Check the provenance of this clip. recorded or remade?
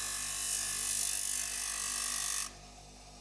recorded